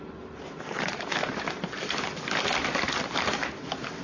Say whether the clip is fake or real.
real